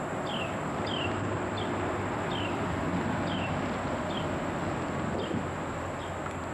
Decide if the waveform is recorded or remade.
recorded